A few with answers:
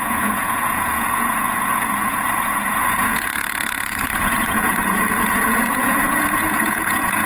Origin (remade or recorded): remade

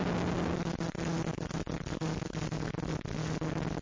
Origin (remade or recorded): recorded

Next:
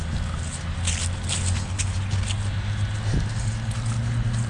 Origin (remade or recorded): recorded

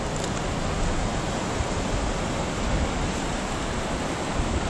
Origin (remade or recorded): recorded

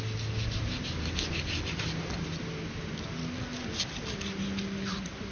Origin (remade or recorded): recorded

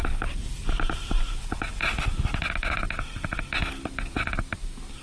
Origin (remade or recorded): recorded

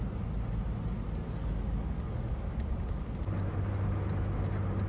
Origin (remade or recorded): recorded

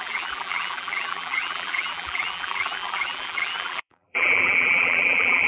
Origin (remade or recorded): remade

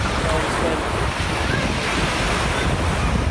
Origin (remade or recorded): recorded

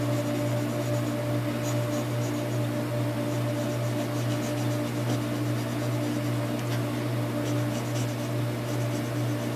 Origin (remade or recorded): recorded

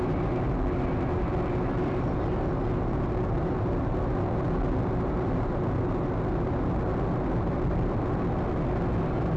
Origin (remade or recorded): recorded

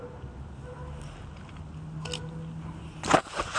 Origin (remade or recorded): recorded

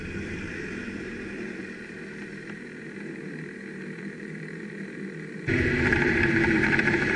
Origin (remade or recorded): remade